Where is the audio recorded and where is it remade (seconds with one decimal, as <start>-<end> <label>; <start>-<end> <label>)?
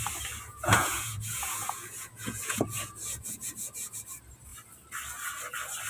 0.0-0.5 recorded; 0.5-4.0 remade; 4.0-5.9 recorded